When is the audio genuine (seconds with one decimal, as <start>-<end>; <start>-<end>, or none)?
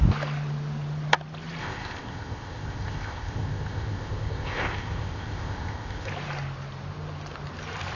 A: 0.0-1.6; 6.1-8.0